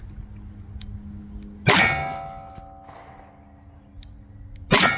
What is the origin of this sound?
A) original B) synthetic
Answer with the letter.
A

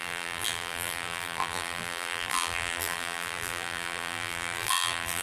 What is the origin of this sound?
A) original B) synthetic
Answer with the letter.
B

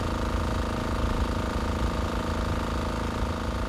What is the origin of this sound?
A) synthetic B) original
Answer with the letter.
B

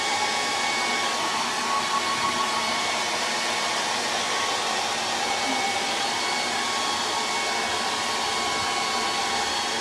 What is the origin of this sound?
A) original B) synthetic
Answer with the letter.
A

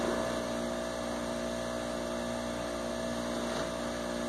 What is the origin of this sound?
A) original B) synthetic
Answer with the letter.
B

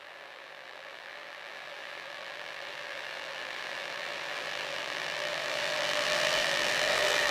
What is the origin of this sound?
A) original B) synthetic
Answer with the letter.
B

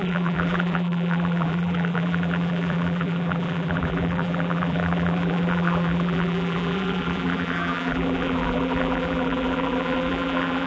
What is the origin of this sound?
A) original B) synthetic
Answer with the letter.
B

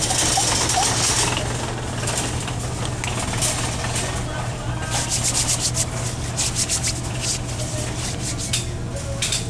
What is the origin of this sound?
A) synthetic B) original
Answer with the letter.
B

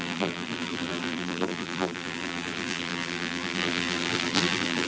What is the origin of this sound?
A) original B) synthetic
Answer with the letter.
B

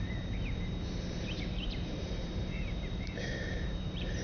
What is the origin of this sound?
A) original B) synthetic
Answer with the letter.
B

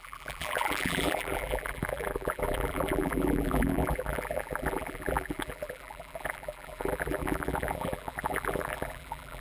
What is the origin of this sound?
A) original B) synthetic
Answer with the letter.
B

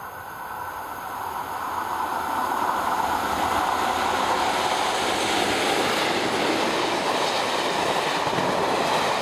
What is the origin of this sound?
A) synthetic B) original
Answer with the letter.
B